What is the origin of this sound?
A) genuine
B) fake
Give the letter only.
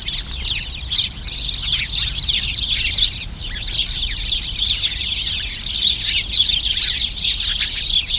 A